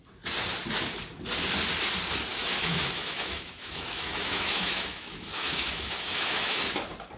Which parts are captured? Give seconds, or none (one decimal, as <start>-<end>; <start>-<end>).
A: 0.0-2.3; 6.6-7.2